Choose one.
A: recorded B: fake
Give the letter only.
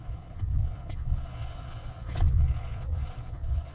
B